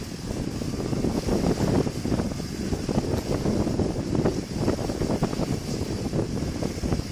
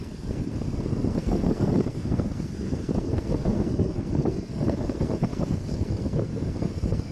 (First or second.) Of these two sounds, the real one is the first